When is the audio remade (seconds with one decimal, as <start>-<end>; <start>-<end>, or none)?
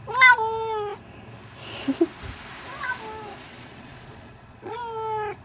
3.5-4.8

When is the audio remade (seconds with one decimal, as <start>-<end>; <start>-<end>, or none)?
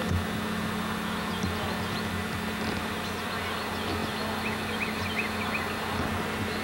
none